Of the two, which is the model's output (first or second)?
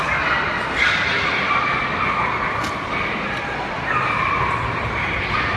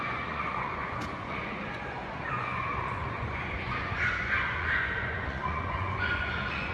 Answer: second